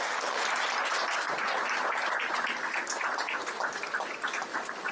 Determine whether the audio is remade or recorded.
recorded